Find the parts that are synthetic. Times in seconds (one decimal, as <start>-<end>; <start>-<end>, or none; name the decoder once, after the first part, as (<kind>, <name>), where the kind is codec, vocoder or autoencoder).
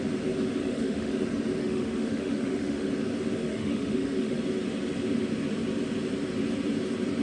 0.6-1.1 (autoencoder, DAC-VAE); 1.6-2.9; 3.4-4.4